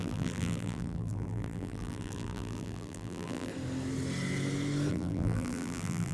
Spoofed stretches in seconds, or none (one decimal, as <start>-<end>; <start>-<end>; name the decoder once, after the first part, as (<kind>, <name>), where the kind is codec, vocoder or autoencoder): 0.0-3.5 (vocoder, BigVGAN v2); 4.9-6.1